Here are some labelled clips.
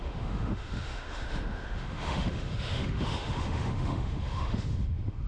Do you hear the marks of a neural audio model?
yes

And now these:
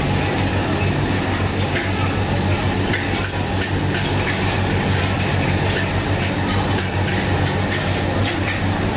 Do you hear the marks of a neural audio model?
no